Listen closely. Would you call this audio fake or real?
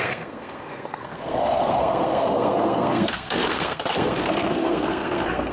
fake